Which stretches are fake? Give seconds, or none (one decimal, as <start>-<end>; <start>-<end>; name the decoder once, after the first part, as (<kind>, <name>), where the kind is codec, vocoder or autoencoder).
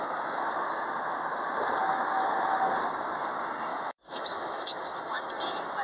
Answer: 1.8-2.7 (autoencoder, DAC-VAE); 3.7-5.3